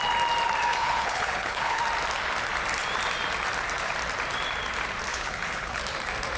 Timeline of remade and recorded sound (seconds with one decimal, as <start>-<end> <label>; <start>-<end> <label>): 0.0-0.7 recorded; 0.7-1.8 remade; 1.8-5.1 recorded; 5.1-5.8 remade; 5.8-6.4 recorded